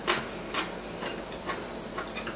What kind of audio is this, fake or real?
real